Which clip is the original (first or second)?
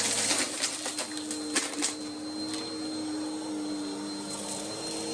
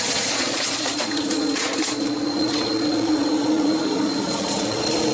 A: first